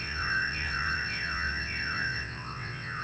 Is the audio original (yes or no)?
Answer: no